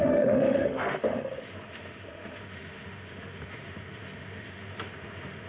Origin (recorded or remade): remade